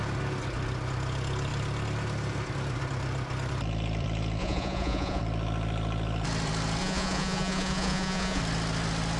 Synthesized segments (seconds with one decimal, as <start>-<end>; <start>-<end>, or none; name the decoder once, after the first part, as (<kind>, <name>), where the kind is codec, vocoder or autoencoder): 4.4-5.2 (vocoder, Vocos); 6.8-8.4